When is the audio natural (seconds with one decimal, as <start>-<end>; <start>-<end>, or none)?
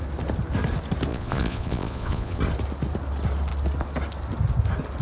0.0-1.1; 2.4-5.0